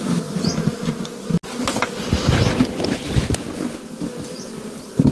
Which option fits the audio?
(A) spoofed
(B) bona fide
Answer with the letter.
B